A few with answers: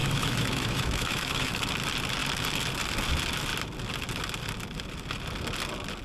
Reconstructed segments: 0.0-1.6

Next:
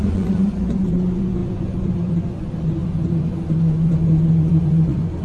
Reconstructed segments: 0.0-5.2